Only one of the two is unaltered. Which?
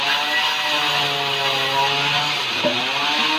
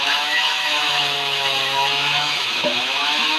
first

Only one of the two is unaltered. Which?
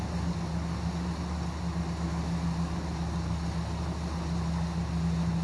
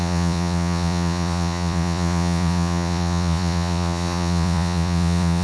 first